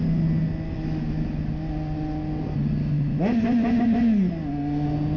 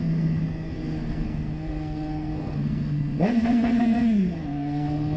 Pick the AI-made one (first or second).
second